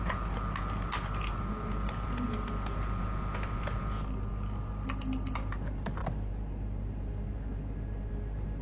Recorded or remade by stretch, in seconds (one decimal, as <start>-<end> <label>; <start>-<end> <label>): 0.0-8.6 recorded